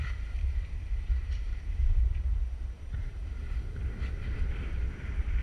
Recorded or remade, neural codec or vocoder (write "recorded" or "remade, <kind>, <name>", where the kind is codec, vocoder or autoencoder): remade, vocoder, BigVGAN v2